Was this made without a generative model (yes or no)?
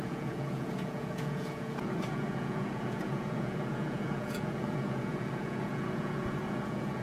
no